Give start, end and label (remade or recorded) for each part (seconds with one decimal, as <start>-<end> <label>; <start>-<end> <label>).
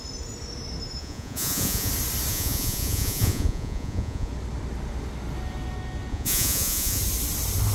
0.0-1.0 recorded; 1.0-1.9 remade; 1.9-2.3 recorded; 2.3-4.3 remade; 4.3-6.1 recorded; 6.1-7.0 remade; 7.0-7.7 recorded